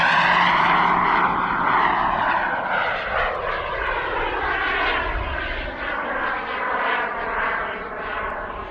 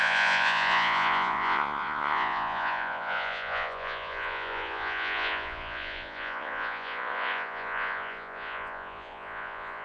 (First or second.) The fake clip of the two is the second